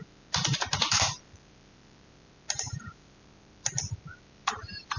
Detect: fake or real fake